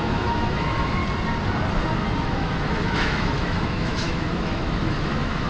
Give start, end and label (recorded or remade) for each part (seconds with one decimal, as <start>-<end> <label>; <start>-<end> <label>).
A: 0.0-1.0 remade; 1.0-2.2 recorded; 2.2-5.5 remade